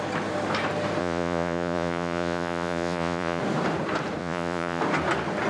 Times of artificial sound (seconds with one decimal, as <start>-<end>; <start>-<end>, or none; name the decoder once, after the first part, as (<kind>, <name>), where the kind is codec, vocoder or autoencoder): 1.0-3.4 (vocoder, Vocos); 4.2-4.8